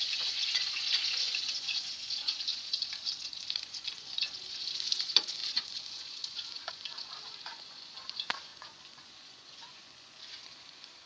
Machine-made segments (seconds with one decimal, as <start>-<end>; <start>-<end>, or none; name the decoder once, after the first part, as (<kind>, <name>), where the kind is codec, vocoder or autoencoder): 0.0-11.1 (vocoder, Vocos)

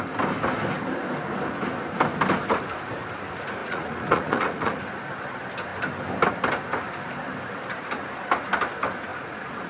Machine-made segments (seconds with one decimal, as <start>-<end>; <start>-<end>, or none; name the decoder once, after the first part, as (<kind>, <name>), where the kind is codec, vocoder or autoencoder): 3.6-4.8 (vocoder, Vocos); 9.1-9.7

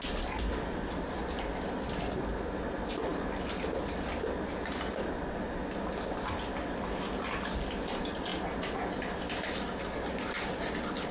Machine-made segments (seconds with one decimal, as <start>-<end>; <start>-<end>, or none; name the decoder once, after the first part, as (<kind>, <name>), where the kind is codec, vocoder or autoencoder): none

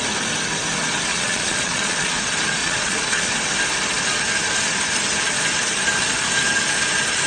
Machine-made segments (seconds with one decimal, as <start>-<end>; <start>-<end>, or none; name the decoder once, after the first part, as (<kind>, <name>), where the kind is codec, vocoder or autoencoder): 1.1-2.2 (vocoder, Vocos); 2.6-3.3

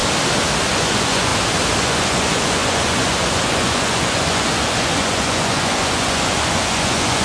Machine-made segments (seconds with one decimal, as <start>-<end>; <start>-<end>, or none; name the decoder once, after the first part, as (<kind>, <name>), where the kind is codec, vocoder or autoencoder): 0.7-1.3 (vocoder, Vocos); 1.8-7.2

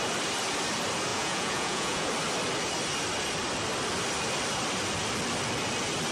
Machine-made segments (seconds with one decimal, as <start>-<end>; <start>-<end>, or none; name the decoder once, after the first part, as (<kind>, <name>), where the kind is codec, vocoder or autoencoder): 1.1-2.1 (vocoder, Vocos)